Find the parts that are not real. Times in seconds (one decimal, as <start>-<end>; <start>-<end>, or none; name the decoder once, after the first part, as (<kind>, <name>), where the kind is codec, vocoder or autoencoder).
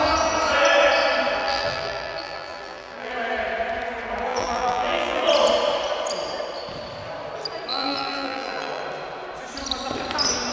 1.4-3.1 (vocoder, BigVGAN v2); 4.3-5.2; 7.7-8.8